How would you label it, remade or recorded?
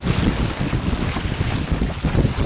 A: recorded